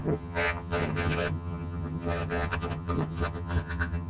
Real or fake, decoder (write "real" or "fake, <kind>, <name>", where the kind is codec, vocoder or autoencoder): fake, vocoder, HiFi-GAN